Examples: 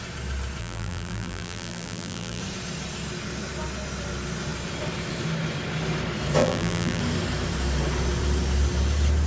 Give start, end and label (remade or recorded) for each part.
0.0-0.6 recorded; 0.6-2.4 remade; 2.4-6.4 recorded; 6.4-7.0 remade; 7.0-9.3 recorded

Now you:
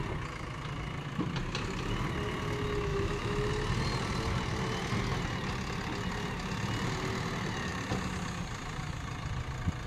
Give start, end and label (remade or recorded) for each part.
0.0-2.9 recorded; 2.9-3.5 remade; 3.5-9.9 recorded

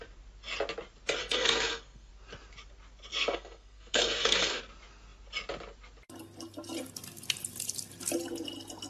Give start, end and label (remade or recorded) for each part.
0.0-1.2 recorded; 1.2-2.1 remade; 2.1-3.1 recorded; 3.1-4.6 remade; 4.6-8.9 recorded

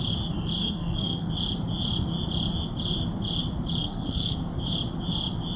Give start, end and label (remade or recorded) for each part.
0.0-0.6 recorded; 0.6-1.3 remade; 1.3-3.8 recorded; 3.8-4.4 remade; 4.4-5.6 recorded